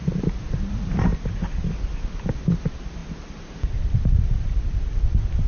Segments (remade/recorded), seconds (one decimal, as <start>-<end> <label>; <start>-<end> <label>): 0.0-5.5 recorded